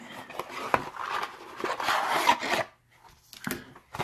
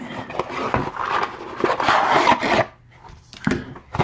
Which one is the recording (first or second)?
first